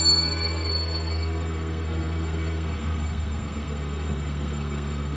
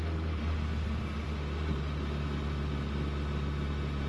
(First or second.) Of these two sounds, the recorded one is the second